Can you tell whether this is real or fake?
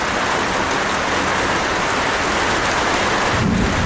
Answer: real